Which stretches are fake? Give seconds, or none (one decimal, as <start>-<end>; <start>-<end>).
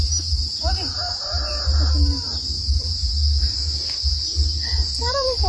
none